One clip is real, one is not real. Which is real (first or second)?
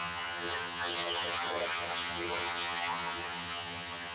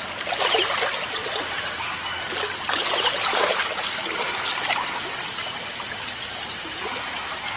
second